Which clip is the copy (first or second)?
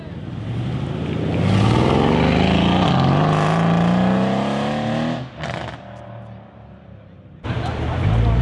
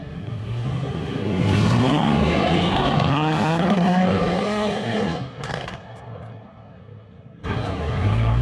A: second